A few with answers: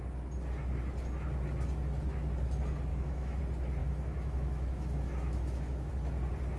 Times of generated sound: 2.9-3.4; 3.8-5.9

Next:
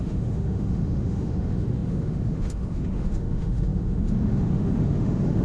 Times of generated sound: 0.0-5.4

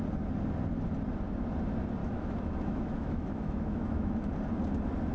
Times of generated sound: 2.0-4.3

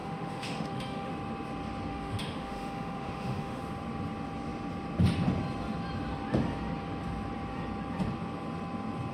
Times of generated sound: 0.0-1.1; 1.9-3.6

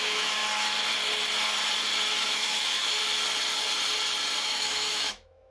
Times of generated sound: 0.0-0.4; 2.2-3.0; 4.4-5.5

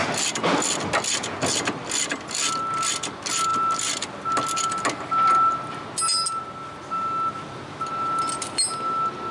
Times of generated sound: none

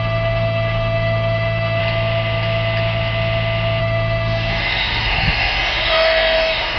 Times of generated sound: 0.0-1.8; 3.8-6.8